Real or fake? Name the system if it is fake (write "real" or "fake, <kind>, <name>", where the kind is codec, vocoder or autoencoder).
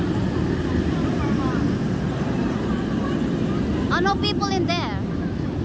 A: real